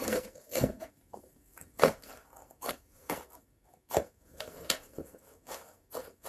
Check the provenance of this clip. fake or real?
fake